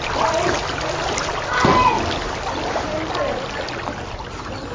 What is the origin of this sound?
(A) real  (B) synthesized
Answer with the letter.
A